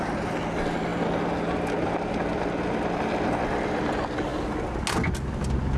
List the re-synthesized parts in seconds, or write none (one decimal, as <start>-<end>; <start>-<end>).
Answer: none